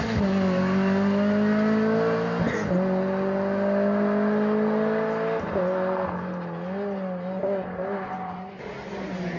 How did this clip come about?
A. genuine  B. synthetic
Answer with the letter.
A